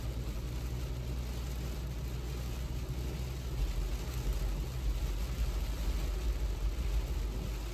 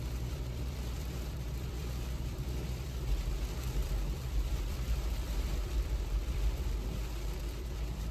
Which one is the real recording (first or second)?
first